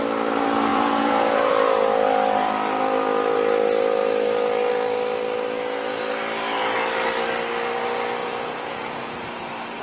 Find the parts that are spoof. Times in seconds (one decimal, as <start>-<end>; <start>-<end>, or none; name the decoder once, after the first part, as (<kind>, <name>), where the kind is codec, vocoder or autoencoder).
0.7-1.5 (vocoder, Vocos); 8.2-9.2